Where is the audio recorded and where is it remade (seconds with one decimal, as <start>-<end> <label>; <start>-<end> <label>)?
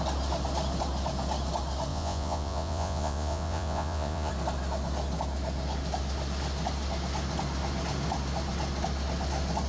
0.0-1.9 recorded; 1.9-4.3 remade; 4.3-9.7 recorded